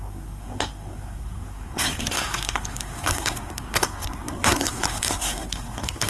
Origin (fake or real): fake